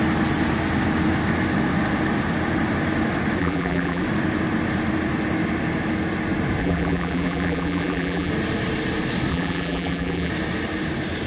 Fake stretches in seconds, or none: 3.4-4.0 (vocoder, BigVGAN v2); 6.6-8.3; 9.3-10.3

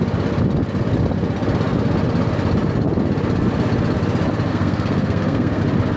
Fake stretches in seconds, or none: 4.5-5.6 (codec, SNAC)

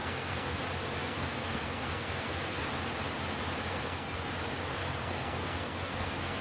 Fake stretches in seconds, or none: 0.0-0.6 (codec, SNAC); 1.0-2.6; 3.7-4.3; 4.8-6.4

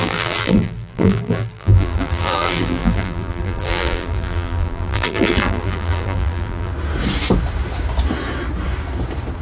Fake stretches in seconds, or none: 0.0-6.7 (vocoder, BigVGAN v2)

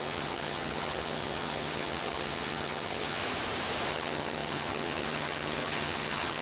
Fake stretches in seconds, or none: 0.0-3.2 (vocoder, HiFi-GAN); 3.9-6.4